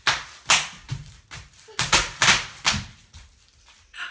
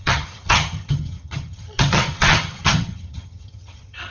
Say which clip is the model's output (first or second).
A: second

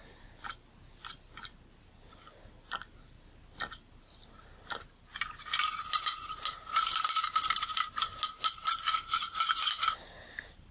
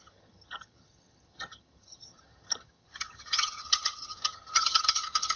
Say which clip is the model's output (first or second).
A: second